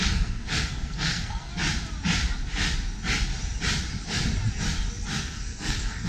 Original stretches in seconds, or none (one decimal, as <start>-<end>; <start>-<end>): 1.5-5.2